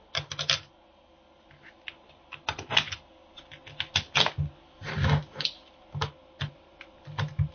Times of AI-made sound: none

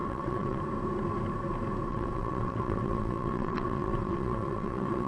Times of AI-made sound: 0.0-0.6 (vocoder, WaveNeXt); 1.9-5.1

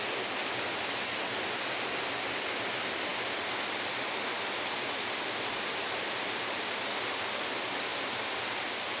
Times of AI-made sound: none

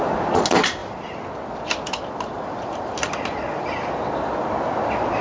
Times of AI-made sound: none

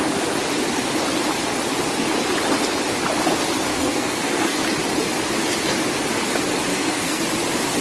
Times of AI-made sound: 3.7-4.6 (codec, SNAC); 6.7-7.2